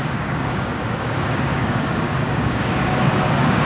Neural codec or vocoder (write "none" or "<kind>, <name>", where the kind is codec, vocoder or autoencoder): codec, DAC